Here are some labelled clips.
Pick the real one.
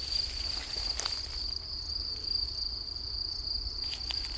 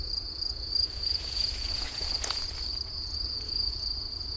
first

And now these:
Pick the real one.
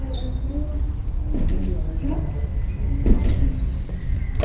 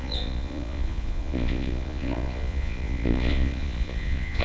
first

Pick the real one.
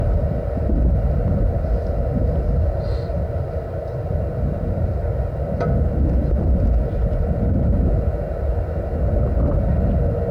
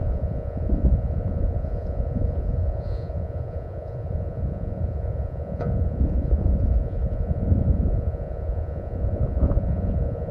first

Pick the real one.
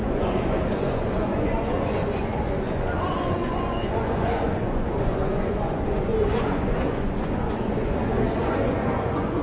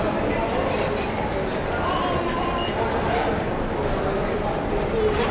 second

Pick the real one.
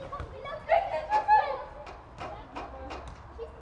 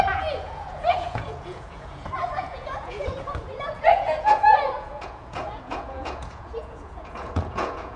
first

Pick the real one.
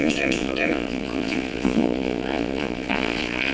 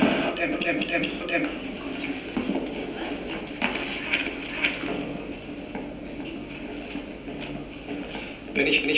second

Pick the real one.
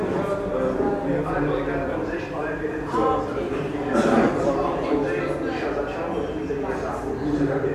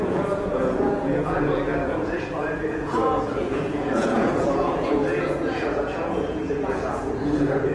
first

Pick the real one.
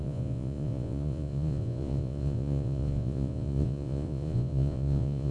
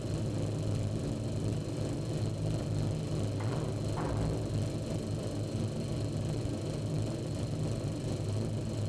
second